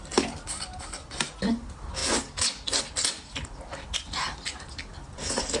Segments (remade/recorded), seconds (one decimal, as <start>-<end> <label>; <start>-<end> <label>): 0.0-5.6 recorded